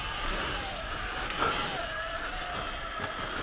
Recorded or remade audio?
recorded